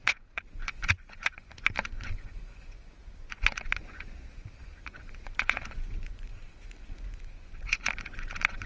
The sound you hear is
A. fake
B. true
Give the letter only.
A